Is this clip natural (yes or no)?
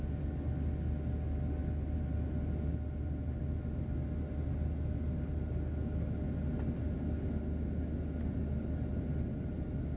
yes